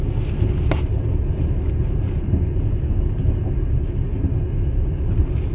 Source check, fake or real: real